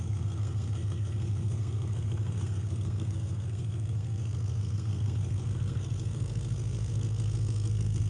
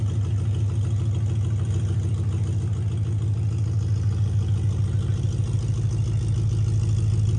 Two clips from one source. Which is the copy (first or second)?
first